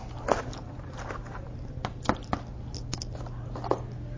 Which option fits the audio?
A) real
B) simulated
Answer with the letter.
A